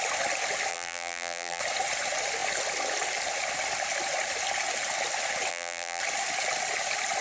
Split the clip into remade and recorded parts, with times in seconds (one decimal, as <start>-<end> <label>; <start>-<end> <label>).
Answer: 0.0-0.7 recorded; 0.7-1.6 remade; 1.6-5.5 recorded; 5.5-6.0 remade; 6.0-7.2 recorded